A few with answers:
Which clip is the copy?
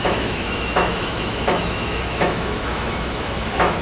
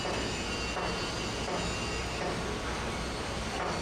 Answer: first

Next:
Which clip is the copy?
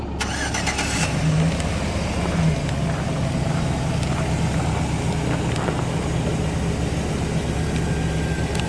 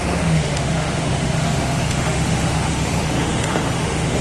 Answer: second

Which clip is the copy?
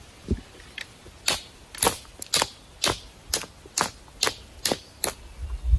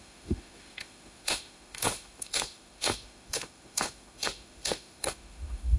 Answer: second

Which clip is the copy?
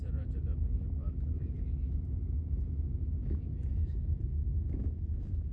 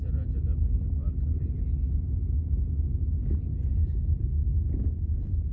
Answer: first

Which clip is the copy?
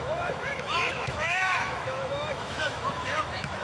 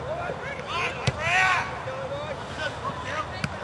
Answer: first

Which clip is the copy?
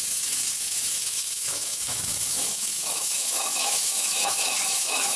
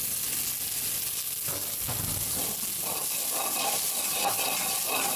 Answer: first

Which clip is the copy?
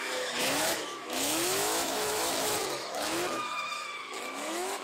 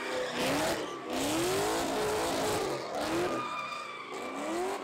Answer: first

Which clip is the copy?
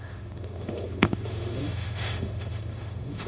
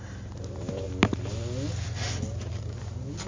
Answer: first